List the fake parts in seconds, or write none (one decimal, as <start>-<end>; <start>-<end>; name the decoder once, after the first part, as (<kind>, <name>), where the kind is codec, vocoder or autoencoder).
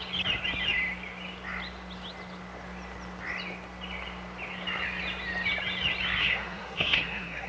6.2-7.5 (codec, SNAC)